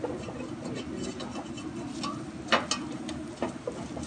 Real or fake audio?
real